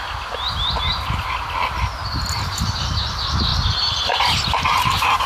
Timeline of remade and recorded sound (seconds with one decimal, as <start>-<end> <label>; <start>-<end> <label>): 0.0-5.3 recorded